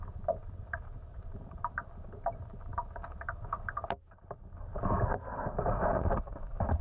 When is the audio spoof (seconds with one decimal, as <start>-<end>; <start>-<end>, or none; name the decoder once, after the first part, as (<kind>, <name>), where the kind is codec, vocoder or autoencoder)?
0.4-1.6 (vocoder, BigVGAN v2); 3.0-5.8